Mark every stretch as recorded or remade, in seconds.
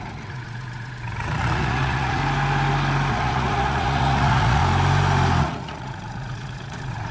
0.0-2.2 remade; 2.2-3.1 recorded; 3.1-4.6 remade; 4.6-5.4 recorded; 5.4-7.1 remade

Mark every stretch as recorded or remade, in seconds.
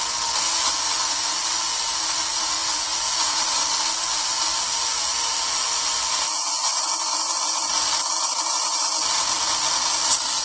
0.0-10.4 recorded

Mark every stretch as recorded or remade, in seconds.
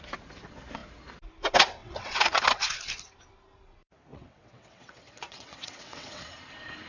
0.0-1.8 recorded; 1.8-2.8 remade; 2.8-4.1 recorded; 4.1-6.3 remade; 6.3-6.9 recorded